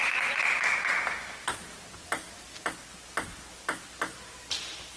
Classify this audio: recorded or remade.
recorded